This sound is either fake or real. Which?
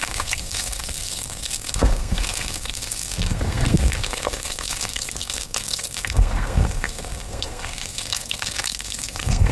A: fake